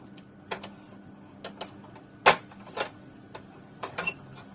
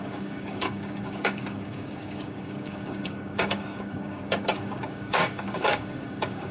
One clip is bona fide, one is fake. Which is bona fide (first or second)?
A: first